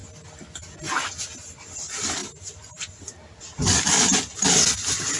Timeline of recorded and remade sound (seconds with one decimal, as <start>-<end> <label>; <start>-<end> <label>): 0.0-5.2 recorded